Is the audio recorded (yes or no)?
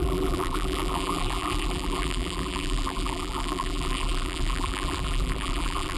no